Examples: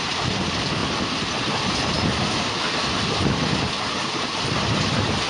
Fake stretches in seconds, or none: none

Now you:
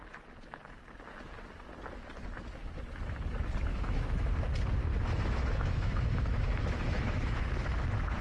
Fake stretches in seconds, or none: 3.7-4.3 (autoencoder, DAC-VAE); 4.9-7.7

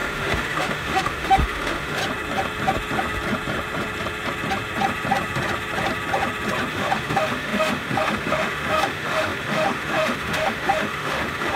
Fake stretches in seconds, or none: 0.0-2.0 (autoencoder, DAC-VAE); 6.7-11.6

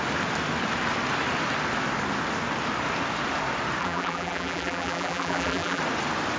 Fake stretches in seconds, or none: 3.8-5.8 (vocoder, BigVGAN v2)

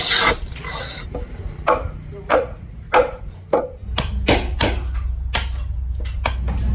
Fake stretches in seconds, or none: 2.3-2.9 (vocoder, Vocos)

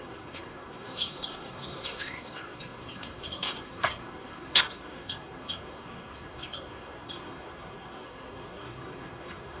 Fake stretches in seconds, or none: 0.0-9.6 (codec, SNAC)

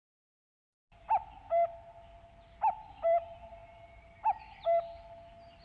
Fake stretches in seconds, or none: none

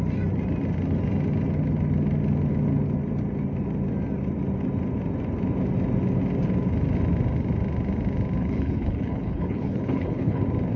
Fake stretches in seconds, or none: 8.4-10.4 (codec, HILCodec)